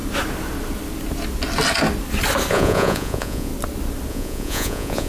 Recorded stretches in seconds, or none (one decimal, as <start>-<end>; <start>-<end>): 0.0-2.5; 3.5-4.1